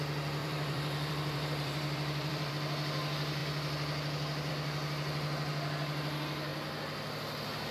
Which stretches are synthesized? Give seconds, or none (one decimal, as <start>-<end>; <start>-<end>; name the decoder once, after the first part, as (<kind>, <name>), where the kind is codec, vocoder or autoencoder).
0.4-2.5 (vocoder, BigVGAN v2)